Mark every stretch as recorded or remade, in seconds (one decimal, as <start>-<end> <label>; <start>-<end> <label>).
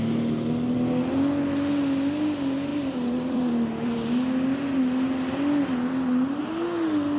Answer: 0.0-2.7 recorded; 2.7-4.1 remade; 4.1-7.2 recorded